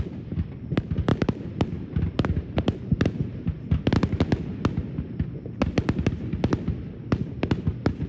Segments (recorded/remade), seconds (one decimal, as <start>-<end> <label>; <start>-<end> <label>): 0.0-1.1 recorded; 1.1-1.9 remade; 1.9-8.1 recorded